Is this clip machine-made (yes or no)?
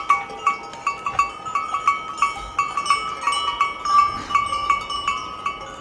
no